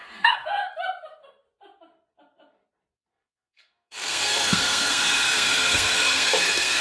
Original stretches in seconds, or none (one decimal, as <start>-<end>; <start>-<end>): 0.7-3.1